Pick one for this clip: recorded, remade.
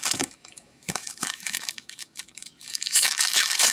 remade